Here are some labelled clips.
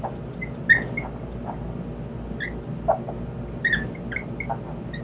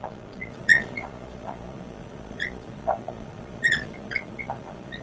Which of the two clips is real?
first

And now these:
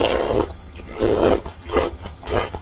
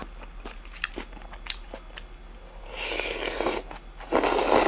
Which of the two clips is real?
second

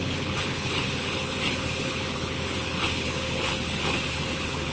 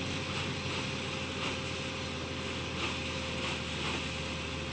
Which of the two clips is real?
second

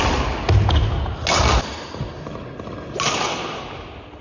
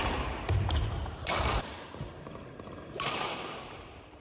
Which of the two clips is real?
first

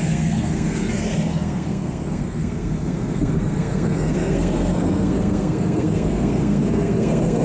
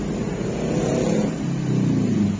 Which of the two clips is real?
second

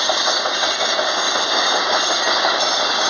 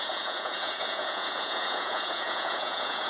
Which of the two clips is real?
first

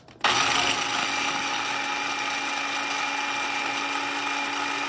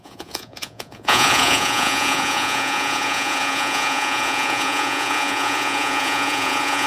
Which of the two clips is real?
first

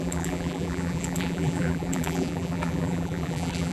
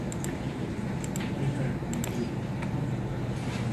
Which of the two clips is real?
second